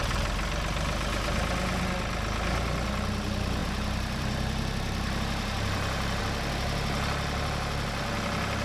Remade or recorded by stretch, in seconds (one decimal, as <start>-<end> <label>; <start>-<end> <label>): 0.0-3.6 recorded; 3.6-6.2 remade; 6.2-8.6 recorded